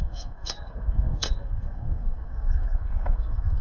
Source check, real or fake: fake